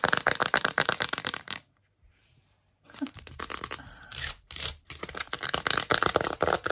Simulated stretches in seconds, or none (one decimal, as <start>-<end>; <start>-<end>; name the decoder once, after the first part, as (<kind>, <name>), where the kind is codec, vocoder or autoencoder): 0.4-3.4 (vocoder, BigVGAN v2); 4.1-4.9